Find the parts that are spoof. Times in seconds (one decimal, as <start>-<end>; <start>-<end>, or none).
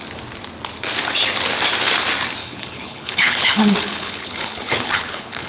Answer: 2.4-5.5